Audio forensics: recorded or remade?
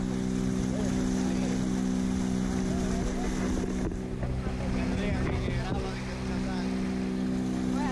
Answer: recorded